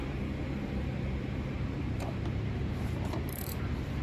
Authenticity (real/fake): fake